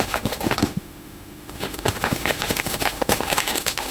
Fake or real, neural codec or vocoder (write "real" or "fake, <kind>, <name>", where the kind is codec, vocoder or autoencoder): fake, autoencoder, DAC-VAE